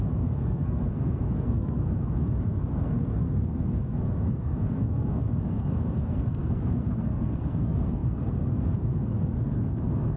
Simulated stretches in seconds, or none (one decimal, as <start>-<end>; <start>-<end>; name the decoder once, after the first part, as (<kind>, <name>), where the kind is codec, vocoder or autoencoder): 0.0-10.2 (codec, SNAC)